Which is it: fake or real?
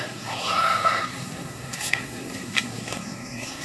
fake